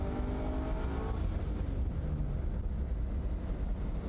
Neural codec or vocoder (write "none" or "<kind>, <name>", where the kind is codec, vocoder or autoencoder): none